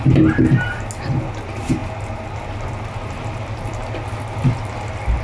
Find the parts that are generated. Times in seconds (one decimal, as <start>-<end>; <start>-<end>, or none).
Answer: none